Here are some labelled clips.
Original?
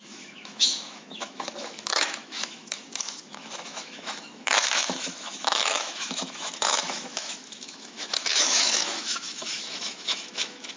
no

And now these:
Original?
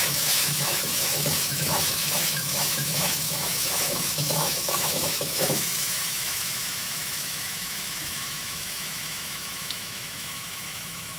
no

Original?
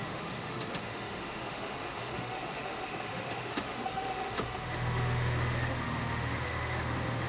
no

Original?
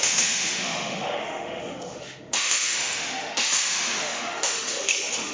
no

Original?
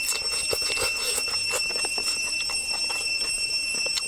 yes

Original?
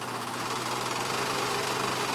yes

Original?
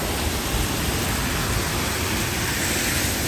yes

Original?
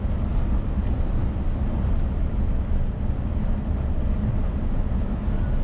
yes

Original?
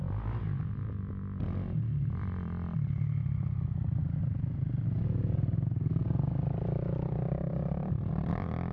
yes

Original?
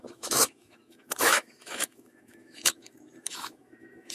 no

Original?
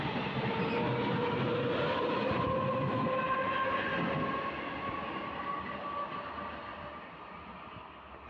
yes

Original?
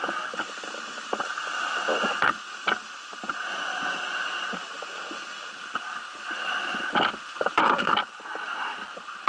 yes